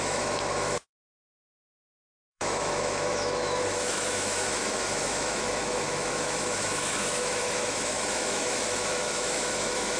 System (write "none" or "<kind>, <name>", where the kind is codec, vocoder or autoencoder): autoencoder, DAC-VAE